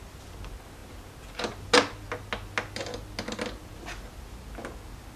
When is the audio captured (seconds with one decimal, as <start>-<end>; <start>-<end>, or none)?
0.0-5.2